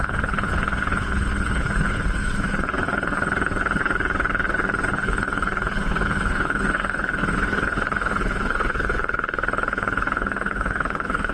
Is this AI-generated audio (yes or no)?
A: yes